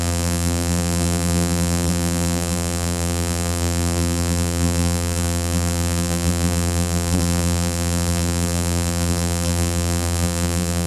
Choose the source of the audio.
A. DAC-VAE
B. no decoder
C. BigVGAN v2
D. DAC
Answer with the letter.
C